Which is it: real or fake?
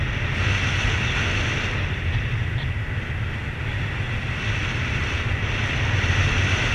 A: real